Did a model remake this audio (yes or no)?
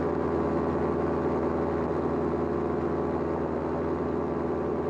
no